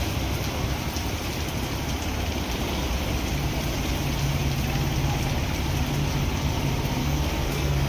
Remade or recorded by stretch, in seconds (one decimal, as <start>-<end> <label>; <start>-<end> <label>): 0.0-7.0 recorded; 7.0-7.9 remade